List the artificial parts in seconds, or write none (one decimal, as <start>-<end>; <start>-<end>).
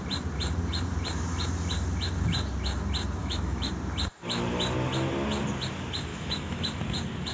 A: 3.2-3.7; 6.1-6.8